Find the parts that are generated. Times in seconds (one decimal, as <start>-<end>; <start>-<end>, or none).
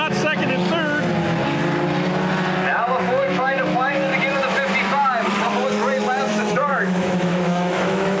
0.0-0.6; 3.0-4.1; 6.3-8.2